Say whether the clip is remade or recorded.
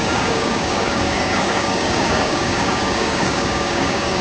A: remade